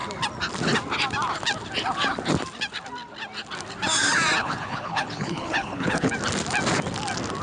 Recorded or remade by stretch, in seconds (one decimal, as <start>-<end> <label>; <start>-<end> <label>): 0.0-4.4 recorded; 4.4-6.1 remade; 6.1-7.4 recorded